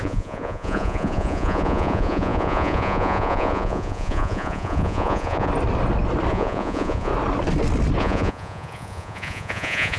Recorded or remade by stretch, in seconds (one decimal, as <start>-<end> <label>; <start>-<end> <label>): 0.0-5.5 remade; 5.5-6.3 recorded; 6.3-7.1 remade; 7.1-8.0 recorded; 8.0-10.0 remade